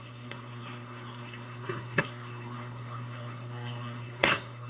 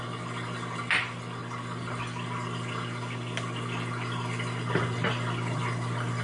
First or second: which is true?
second